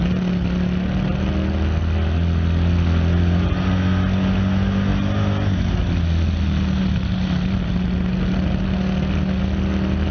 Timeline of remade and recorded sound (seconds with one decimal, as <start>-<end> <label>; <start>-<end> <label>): 0.0-10.1 recorded